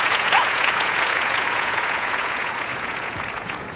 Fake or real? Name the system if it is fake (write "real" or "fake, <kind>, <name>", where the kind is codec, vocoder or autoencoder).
fake, vocoder, Vocos